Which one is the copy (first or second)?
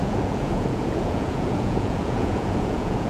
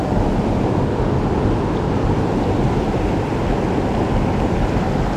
first